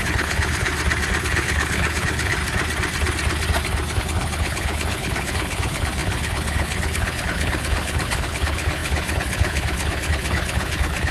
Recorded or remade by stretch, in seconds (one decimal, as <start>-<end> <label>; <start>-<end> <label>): 0.0-0.7 remade; 0.7-1.2 recorded; 1.2-2.4 remade; 2.4-4.0 recorded; 4.0-11.1 remade

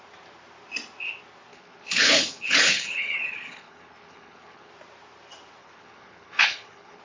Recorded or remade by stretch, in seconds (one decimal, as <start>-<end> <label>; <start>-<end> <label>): 0.0-1.5 recorded; 1.5-4.7 remade; 4.7-5.6 recorded; 5.6-7.0 remade

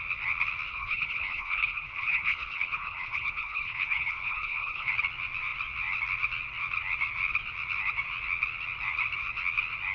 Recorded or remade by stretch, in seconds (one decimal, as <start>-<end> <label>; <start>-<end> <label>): 0.0-0.7 recorded; 0.7-4.9 remade; 4.9-9.9 recorded

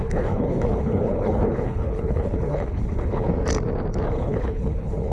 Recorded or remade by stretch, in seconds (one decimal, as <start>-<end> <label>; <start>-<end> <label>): 0.0-3.3 remade; 3.3-4.1 recorded; 4.1-5.1 remade